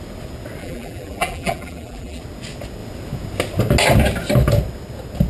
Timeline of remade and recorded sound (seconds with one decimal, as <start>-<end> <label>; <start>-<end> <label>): 0.0-0.6 recorded; 0.6-2.2 remade; 2.2-5.3 recorded